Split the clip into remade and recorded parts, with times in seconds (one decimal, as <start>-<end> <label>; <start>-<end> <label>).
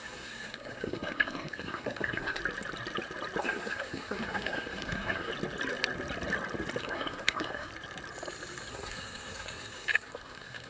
0.0-2.4 remade; 2.4-3.4 recorded; 3.4-5.3 remade; 5.3-6.8 recorded; 6.8-7.7 remade; 7.7-8.7 recorded; 8.7-10.7 remade